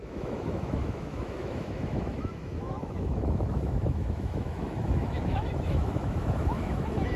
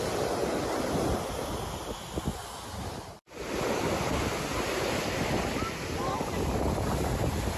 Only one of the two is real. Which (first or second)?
second